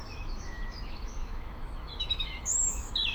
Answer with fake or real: fake